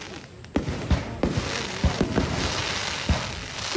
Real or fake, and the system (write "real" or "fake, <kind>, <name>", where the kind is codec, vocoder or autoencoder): real